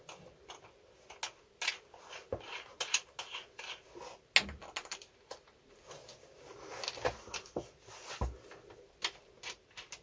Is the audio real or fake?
real